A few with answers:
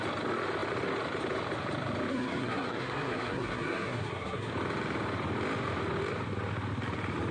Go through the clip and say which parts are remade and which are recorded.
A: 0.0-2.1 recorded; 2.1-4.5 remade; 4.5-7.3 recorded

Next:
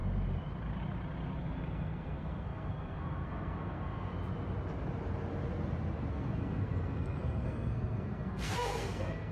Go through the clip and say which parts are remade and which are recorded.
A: 0.0-1.4 recorded; 1.4-4.1 remade; 4.1-6.1 recorded; 6.1-9.3 remade

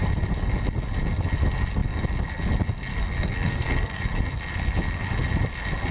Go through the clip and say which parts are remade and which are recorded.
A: 0.0-2.9 recorded; 2.9-4.0 remade; 4.0-5.9 recorded

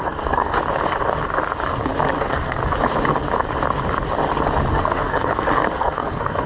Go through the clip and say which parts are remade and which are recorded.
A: 0.0-0.6 remade; 0.6-2.2 recorded; 2.2-2.6 remade; 2.6-4.7 recorded; 4.7-6.5 remade

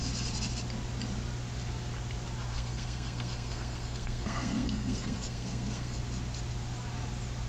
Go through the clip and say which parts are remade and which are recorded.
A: 0.0-2.5 recorded; 2.5-6.0 remade; 6.0-7.5 recorded

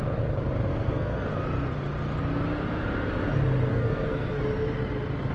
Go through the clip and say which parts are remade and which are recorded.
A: 0.0-0.7 recorded; 0.7-1.3 remade; 1.3-3.7 recorded; 3.7-4.4 remade; 4.4-5.3 recorded